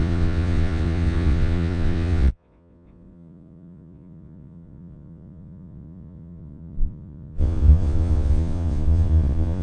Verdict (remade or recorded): remade